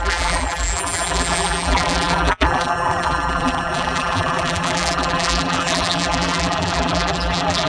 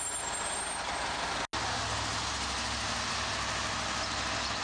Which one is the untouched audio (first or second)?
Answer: second